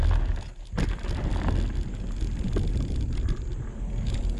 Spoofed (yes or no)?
no